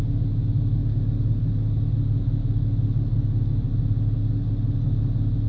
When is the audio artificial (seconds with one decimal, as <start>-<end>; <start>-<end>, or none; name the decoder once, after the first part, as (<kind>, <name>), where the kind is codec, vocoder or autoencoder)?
none

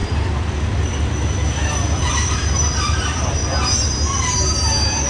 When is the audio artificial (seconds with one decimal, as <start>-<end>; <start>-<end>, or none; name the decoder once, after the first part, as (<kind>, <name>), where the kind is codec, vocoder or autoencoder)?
2.1-3.4 (vocoder, BigVGAN v2)